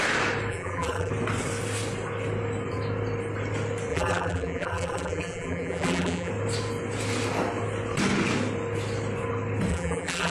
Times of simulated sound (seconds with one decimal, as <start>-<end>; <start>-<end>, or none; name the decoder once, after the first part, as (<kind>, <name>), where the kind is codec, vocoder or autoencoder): 0.5-1.1 (vocoder, BigVGAN v2); 3.9-6.3; 9.7-10.3